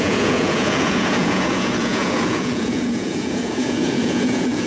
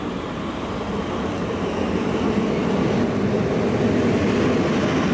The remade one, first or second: first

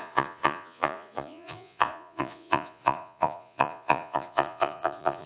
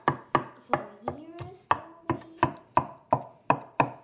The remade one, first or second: first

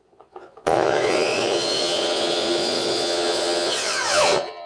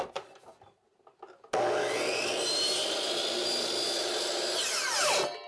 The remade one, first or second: first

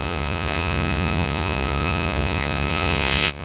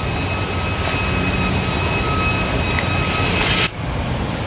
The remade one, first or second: first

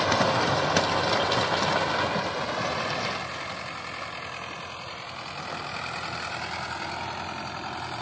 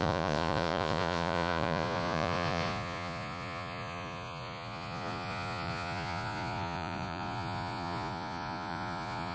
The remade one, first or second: second